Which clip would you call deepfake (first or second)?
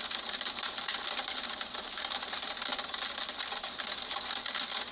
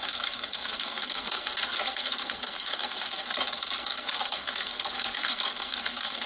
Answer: second